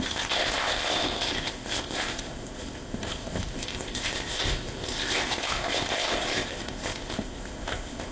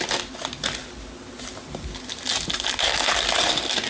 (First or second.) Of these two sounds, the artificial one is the first